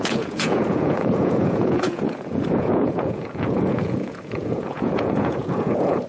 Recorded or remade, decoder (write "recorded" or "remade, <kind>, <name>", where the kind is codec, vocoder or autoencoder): remade, vocoder, Vocos